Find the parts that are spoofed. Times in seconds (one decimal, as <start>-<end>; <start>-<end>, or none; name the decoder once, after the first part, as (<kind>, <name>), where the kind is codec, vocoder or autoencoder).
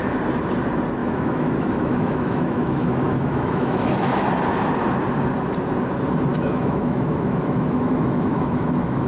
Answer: 1.0-4.2 (autoencoder, DAC-VAE); 6.3-9.1